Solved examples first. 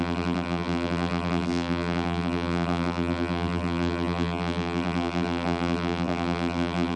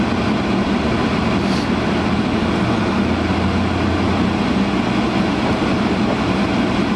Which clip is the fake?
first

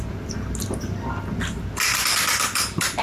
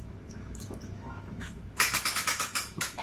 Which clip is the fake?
second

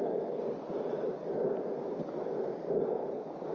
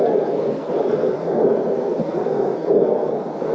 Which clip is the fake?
second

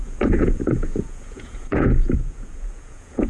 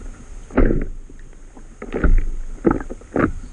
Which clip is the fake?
first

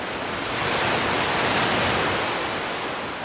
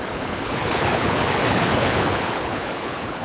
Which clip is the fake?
second